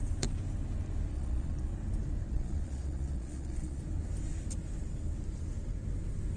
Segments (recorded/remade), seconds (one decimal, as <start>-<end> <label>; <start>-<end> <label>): 0.0-1.1 recorded; 1.1-1.7 remade; 1.7-2.3 recorded; 2.3-3.8 remade; 3.8-6.4 recorded